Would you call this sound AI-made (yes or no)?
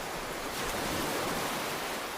yes